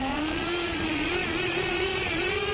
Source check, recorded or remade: remade